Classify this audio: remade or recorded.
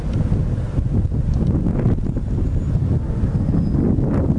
recorded